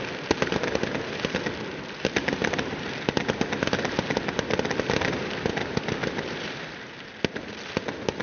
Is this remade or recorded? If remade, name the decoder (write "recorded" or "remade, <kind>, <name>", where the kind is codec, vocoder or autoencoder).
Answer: recorded